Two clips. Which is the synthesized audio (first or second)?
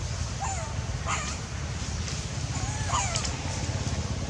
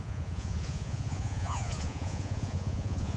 second